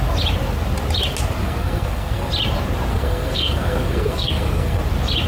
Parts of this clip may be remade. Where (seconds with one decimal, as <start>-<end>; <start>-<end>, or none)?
1.4-2.3; 2.9-4.8